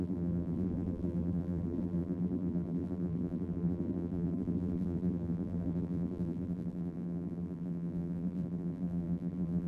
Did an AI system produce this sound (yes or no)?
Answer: yes